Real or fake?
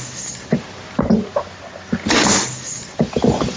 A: real